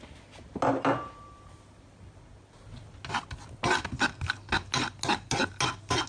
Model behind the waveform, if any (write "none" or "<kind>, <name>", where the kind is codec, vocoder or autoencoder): none